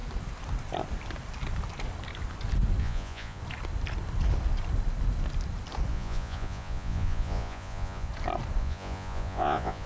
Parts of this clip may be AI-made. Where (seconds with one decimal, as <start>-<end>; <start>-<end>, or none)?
2.8-3.4; 5.9-8.1; 8.6-9.9